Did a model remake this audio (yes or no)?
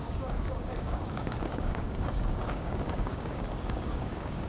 yes